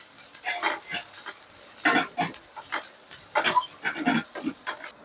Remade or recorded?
recorded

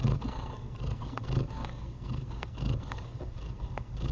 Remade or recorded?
remade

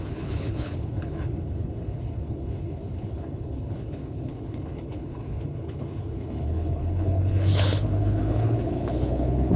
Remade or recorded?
remade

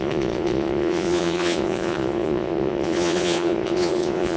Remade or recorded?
remade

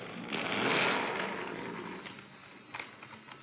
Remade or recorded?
recorded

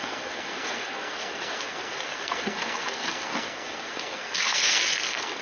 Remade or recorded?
remade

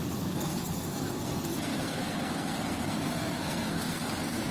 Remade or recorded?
remade